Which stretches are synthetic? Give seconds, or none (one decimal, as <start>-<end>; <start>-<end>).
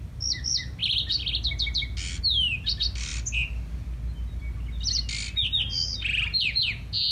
6.3-7.1